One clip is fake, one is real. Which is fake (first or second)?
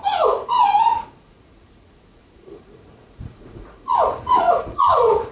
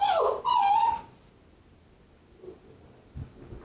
first